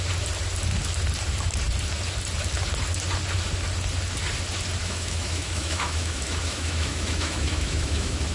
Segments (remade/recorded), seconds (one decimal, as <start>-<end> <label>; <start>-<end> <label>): 0.0-4.8 recorded; 4.8-8.3 remade